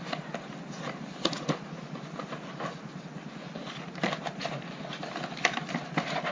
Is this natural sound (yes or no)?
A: yes